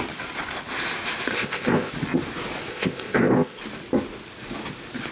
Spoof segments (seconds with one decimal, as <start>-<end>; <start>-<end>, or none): 1.3-1.9; 2.7-3.6